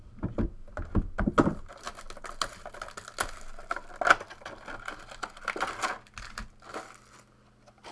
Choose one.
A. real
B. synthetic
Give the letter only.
A